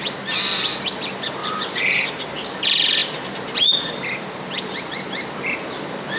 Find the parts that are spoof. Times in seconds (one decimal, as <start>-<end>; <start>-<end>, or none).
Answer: 1.4-2.2